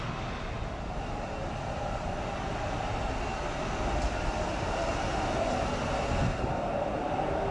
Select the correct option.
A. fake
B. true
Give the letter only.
B